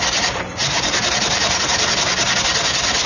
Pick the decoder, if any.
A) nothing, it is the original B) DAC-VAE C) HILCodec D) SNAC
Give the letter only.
A